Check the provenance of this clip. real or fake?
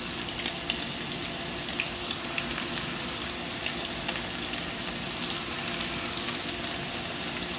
real